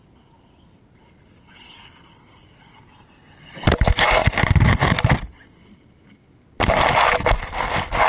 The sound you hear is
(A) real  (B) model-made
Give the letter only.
A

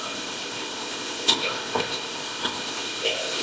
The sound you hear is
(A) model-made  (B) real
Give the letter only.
A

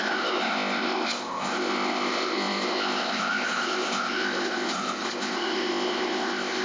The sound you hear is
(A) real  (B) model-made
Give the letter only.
B